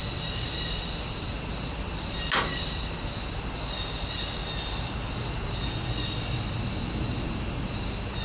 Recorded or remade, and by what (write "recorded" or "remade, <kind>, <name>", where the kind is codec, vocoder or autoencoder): recorded